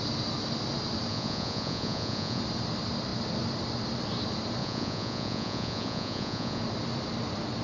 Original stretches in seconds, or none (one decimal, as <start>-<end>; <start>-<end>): 0.0-1.1; 2.4-4.6; 6.6-7.6